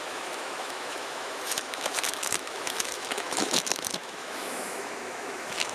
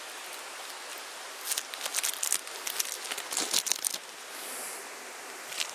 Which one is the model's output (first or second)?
first